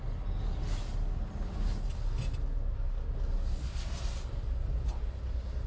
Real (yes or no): yes